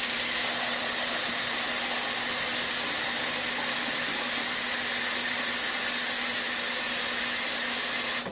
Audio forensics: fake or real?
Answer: real